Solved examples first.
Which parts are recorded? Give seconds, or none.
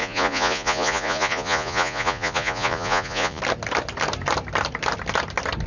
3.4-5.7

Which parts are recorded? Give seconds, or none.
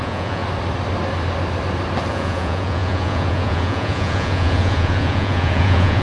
0.4-2.1